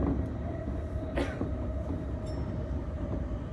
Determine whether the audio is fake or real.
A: real